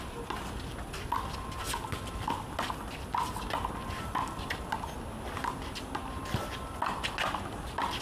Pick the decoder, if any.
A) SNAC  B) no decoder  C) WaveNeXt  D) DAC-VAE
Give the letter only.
B